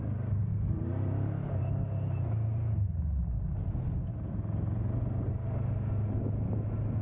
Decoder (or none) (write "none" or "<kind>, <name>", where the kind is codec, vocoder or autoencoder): none